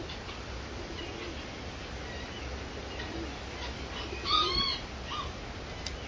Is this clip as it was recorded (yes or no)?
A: yes